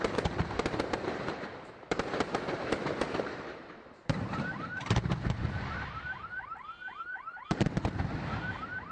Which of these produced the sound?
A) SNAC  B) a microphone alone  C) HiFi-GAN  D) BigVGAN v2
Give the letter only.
D